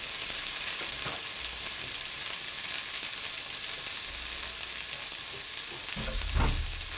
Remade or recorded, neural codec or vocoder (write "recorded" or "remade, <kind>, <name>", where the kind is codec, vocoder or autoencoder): recorded